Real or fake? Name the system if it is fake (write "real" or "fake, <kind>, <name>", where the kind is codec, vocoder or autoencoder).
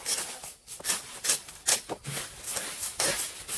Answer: real